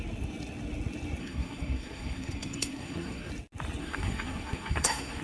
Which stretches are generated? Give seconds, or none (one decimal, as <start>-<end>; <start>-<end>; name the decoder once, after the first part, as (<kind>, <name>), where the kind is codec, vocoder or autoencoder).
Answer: 1.2-3.3 (codec, SNAC); 3.8-5.2